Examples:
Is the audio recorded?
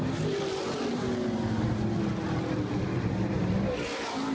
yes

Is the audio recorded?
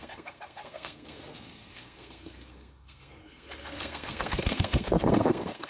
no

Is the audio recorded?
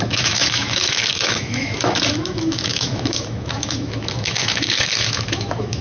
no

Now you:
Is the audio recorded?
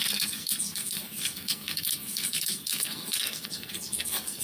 no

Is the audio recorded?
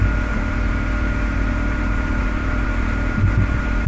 no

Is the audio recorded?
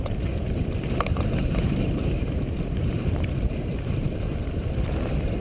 no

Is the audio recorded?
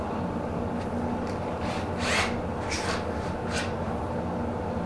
yes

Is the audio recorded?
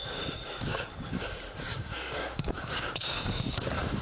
no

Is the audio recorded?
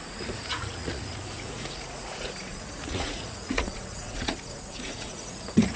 no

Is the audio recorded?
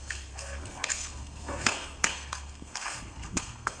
no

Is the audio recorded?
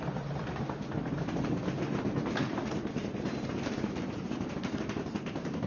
no